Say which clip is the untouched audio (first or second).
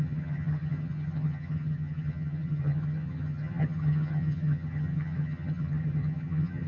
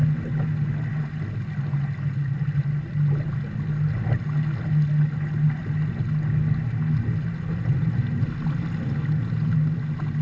second